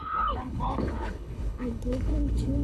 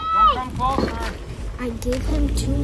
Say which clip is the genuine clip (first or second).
second